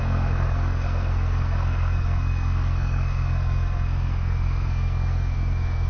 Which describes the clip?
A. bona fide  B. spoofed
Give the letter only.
B